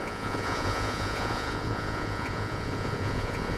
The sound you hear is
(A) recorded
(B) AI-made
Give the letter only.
B